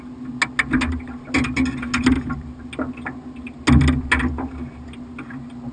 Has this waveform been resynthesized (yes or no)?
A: no